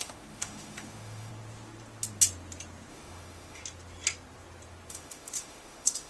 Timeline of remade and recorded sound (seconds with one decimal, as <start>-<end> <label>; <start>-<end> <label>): 0.0-1.3 remade; 1.3-2.9 recorded; 2.9-3.6 remade; 3.6-4.9 recorded; 4.9-6.1 remade